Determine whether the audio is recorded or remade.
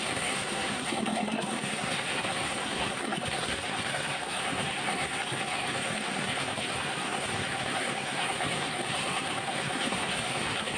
remade